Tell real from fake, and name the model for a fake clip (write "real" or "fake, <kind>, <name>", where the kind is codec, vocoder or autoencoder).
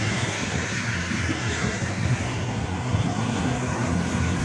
fake, codec, SNAC